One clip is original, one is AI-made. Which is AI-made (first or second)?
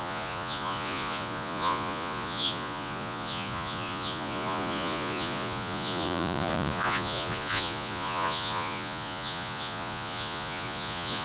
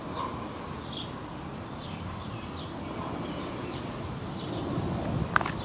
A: first